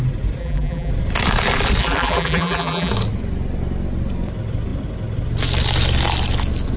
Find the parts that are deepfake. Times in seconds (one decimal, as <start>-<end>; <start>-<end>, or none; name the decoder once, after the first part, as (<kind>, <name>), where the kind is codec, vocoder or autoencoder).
0.4-0.9 (vocoder, BigVGAN v2); 1.8-2.9